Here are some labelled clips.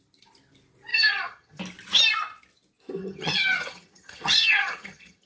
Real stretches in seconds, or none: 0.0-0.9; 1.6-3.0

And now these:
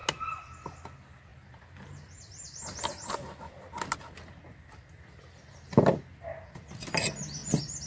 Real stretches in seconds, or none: 0.0-7.9

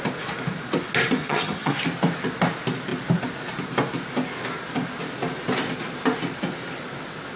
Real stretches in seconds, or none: 0.0-1.2; 1.8-7.4

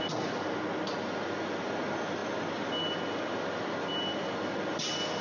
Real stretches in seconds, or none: 0.0-5.2